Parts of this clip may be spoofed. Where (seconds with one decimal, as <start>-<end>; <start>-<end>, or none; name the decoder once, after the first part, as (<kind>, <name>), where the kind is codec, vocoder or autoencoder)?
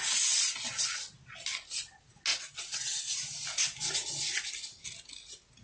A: 2.3-3.1 (vocoder, WaveNeXt)